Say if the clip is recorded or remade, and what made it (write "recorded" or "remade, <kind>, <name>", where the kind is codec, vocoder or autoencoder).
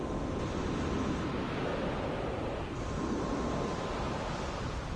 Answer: recorded